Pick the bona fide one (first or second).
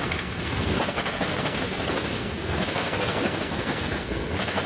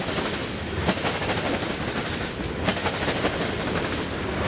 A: second